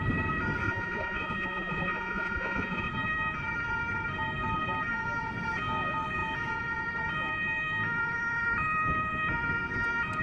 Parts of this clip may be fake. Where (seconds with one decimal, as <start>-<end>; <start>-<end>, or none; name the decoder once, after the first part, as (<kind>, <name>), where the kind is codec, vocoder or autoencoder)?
0.6-2.9 (vocoder, Vocos)